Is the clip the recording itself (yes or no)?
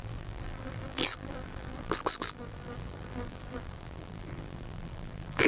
no